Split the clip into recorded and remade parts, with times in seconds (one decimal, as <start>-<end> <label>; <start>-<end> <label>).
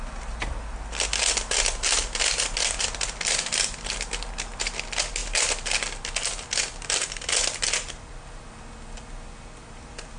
0.0-10.2 recorded